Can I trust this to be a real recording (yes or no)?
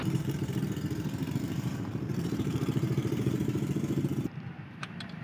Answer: no